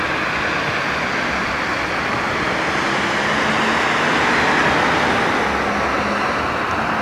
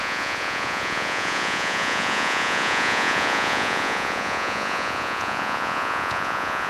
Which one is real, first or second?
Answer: first